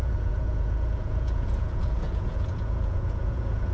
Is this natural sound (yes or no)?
no